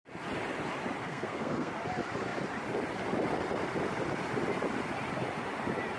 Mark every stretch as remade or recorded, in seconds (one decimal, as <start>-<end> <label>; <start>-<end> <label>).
0.0-1.0 recorded; 1.0-1.7 remade; 1.7-6.0 recorded